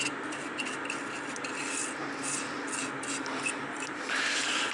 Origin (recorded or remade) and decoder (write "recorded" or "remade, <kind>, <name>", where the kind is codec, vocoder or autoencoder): recorded